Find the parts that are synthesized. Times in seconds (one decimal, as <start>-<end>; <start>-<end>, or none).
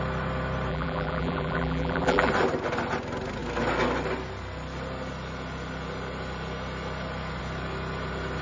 0.7-2.3